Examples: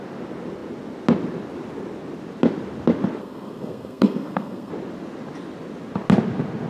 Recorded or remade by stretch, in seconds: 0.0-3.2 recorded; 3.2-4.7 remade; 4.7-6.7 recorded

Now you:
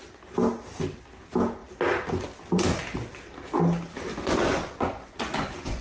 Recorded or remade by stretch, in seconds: 0.0-4.1 recorded; 4.1-5.8 remade

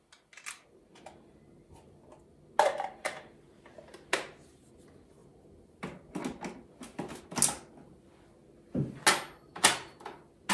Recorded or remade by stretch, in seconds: 0.0-10.5 recorded